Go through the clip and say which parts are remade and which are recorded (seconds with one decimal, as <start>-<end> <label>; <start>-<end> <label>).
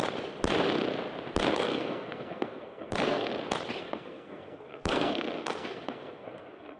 0.0-1.5 recorded; 1.5-3.3 remade; 3.3-3.8 recorded; 3.8-6.8 remade